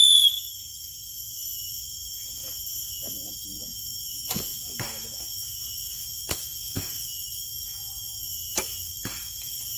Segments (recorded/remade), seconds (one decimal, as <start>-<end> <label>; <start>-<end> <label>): 0.0-9.8 remade